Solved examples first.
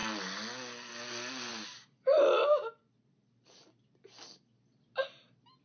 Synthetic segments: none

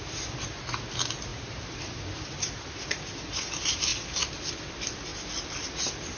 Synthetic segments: 0.0-5.1 (vocoder, BigVGAN v2); 5.7-6.2

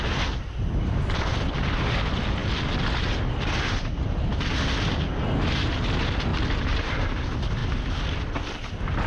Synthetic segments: 2.4-3.9 (vocoder, BigVGAN v2); 6.3-7.1

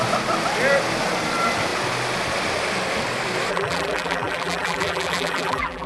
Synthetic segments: 3.5-5.9 (vocoder, BigVGAN v2)

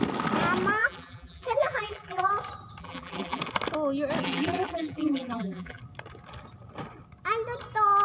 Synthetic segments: 0.8-2.3 (vocoder, BigVGAN v2); 2.8-3.4; 4.2-5.8